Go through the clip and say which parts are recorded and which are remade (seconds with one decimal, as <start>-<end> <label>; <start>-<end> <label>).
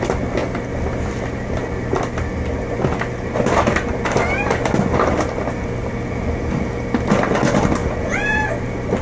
0.0-7.8 recorded; 7.8-8.4 remade; 8.4-9.0 recorded